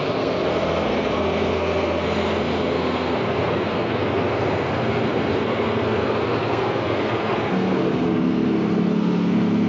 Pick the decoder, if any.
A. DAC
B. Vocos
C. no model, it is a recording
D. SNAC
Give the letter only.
D